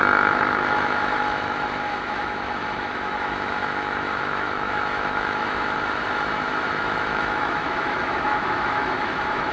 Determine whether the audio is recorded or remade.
remade